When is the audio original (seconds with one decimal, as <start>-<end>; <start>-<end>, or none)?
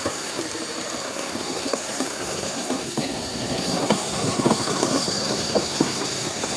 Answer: 0.4-1.0